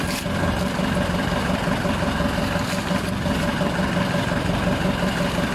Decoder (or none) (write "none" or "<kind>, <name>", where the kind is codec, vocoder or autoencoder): none